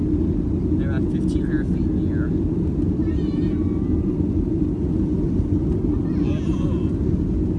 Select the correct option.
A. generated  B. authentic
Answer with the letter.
B